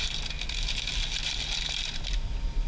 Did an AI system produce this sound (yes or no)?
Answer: no